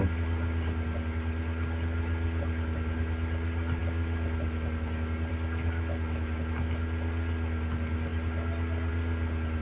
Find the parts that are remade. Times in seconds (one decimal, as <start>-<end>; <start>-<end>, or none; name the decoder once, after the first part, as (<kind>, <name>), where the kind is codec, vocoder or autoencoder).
none